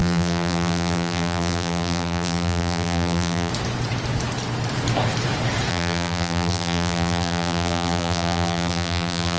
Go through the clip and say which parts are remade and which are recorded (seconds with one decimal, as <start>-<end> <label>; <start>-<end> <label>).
0.0-3.5 remade; 3.5-5.7 recorded; 5.7-9.4 remade